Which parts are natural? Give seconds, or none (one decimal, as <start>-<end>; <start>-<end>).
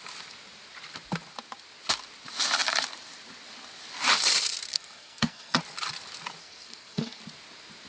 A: 0.0-4.7; 5.6-6.4; 7.2-7.9